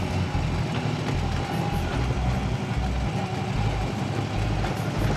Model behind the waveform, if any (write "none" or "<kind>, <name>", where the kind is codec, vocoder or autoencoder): none